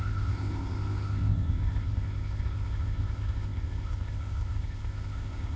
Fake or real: fake